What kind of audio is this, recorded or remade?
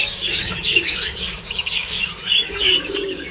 remade